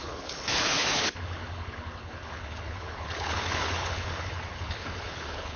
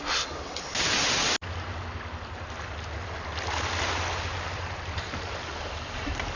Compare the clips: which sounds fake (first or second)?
first